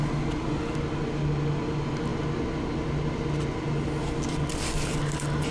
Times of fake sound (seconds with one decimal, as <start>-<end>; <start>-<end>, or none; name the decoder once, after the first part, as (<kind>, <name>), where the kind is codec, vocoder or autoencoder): none